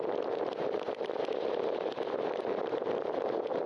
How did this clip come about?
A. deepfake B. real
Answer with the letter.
A